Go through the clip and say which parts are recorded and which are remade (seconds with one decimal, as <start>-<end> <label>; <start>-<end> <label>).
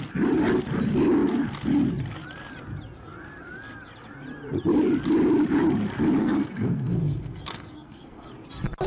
0.0-6.2 recorded; 6.2-8.3 remade; 8.3-8.9 recorded